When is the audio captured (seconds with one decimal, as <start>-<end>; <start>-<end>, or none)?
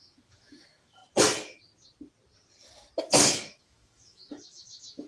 1.0-3.0